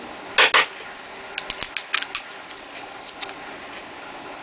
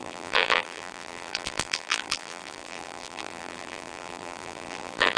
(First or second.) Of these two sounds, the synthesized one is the second